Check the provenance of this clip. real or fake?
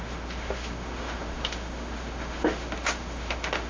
fake